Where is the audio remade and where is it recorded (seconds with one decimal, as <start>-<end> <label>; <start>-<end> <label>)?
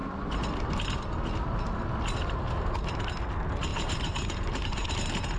0.0-3.7 recorded; 3.7-5.4 remade